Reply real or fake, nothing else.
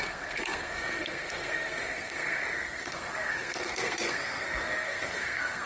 fake